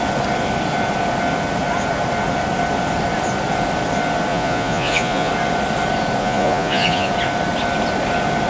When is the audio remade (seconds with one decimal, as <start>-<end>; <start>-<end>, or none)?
4.3-5.3; 6.2-7.1